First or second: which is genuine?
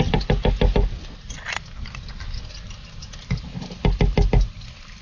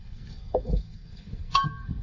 first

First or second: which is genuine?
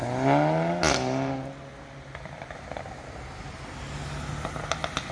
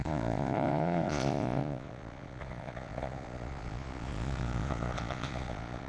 first